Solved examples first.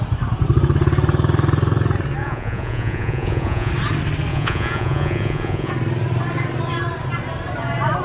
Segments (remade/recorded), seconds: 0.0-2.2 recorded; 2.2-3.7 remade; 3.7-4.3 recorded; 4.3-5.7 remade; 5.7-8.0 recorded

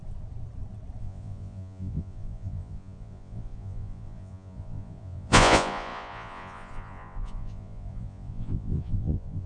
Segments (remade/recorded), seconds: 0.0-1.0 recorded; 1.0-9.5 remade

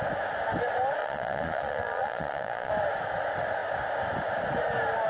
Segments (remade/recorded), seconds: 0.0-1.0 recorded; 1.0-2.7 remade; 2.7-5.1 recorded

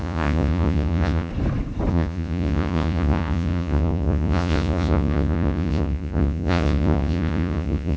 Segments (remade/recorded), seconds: 0.0-1.3 remade; 1.3-1.9 recorded; 1.9-8.0 remade

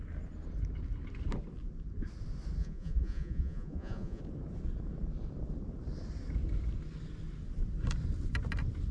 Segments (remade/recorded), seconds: 0.0-2.6 recorded; 2.6-4.2 remade; 4.2-8.9 recorded